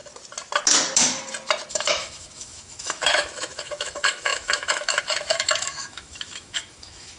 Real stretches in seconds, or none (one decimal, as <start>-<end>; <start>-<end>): 0.0-1.7